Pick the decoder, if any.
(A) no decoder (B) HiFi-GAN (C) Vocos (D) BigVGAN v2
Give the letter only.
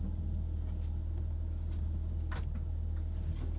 A